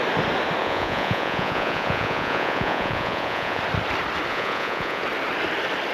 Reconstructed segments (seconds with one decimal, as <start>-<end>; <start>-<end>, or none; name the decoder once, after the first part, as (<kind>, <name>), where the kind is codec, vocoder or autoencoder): 0.6-3.6 (vocoder, Vocos); 4.3-5.0